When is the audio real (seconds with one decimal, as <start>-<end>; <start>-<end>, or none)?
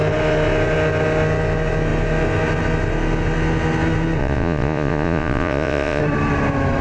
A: 0.0-4.2; 6.0-6.8